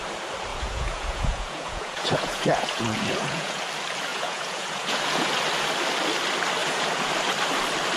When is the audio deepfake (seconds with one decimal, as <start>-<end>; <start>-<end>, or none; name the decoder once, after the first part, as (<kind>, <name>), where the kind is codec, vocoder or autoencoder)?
0.5-3.6 (vocoder, Vocos); 4.1-5.3; 6.6-7.1